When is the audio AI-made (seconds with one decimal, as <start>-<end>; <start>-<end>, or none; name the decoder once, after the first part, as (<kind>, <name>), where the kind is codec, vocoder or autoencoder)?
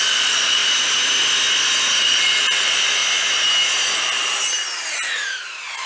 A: 0.0-0.6 (vocoder, BigVGAN v2); 2.0-3.0; 4.9-5.9